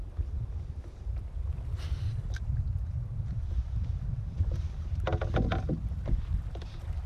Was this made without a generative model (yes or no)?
yes